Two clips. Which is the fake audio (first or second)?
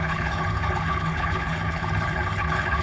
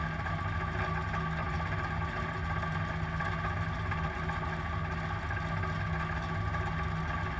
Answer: first